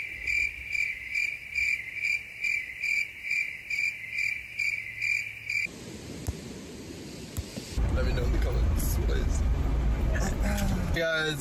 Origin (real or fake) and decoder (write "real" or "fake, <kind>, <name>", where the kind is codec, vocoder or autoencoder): real